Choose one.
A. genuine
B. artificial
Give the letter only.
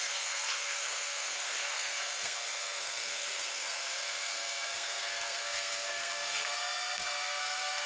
B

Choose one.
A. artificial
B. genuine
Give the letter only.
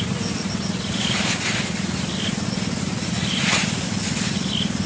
B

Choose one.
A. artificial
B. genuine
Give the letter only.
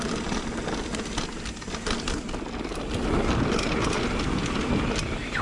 B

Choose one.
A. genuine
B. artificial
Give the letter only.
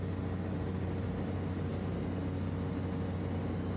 A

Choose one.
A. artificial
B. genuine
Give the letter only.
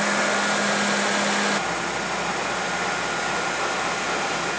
B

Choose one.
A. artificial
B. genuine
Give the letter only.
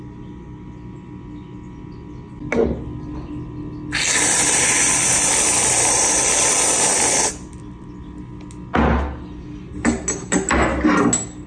B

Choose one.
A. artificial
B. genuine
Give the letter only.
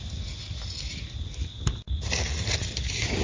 B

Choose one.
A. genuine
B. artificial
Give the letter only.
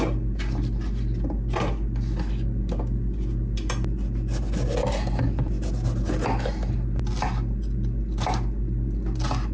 A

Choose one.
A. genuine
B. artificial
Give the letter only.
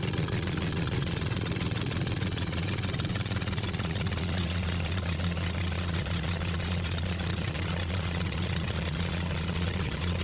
B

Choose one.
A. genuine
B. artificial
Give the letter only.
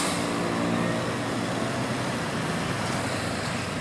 A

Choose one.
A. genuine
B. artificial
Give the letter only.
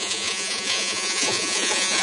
B